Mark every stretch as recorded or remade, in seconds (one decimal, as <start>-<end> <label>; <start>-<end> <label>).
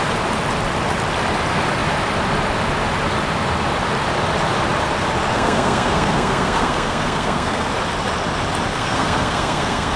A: 0.0-5.3 recorded; 5.3-7.7 remade; 7.7-8.7 recorded; 8.7-10.0 remade